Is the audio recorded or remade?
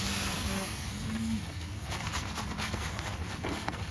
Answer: remade